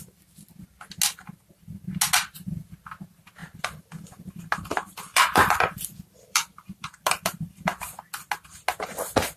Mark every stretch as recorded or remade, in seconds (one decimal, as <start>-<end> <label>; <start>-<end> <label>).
0.0-3.4 recorded; 3.4-8.0 remade; 8.0-9.4 recorded